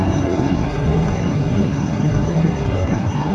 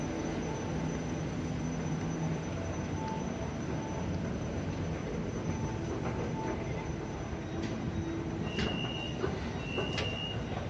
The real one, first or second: second